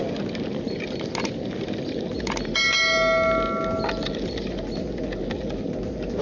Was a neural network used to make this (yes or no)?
no